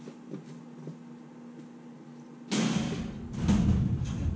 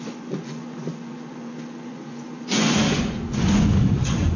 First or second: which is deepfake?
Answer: second